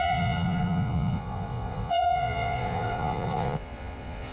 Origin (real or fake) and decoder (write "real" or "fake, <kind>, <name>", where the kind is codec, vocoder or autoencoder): fake, vocoder, Vocos